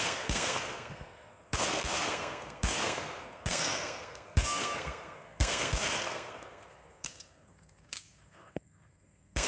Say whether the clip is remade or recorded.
remade